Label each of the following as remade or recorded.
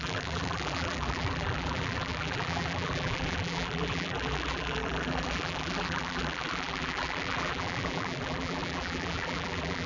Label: remade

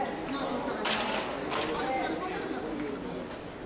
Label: recorded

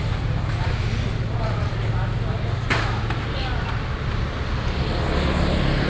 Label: recorded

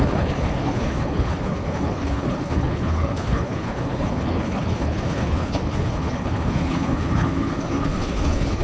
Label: remade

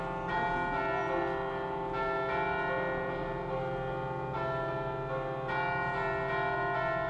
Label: recorded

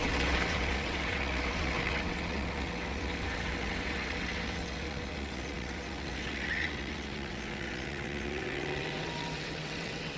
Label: remade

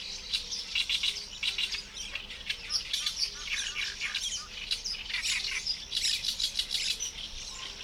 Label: recorded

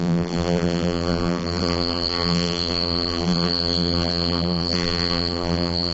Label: remade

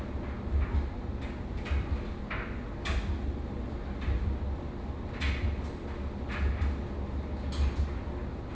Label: recorded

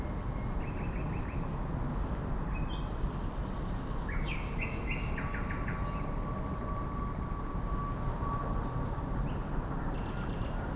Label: recorded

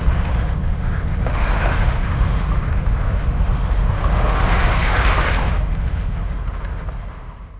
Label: remade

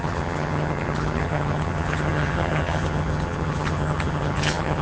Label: remade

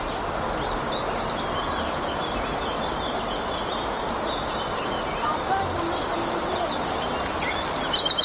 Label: recorded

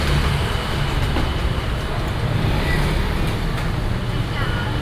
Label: recorded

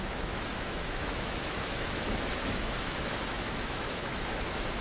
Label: remade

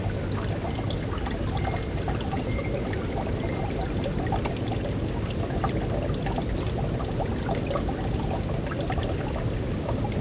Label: recorded